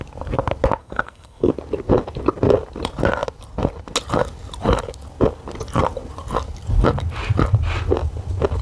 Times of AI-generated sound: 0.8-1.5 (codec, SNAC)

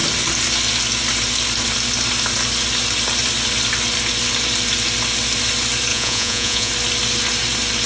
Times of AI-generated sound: 5.9-6.7 (vocoder, Vocos)